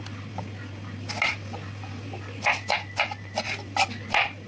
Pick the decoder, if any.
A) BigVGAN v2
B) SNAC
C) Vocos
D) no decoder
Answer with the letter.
D